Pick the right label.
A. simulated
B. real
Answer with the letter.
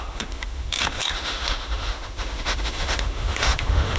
A